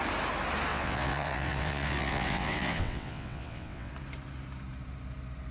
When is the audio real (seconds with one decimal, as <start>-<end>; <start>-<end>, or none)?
0.0-0.7; 3.9-5.5